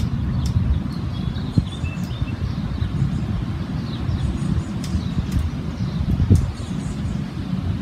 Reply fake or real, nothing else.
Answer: real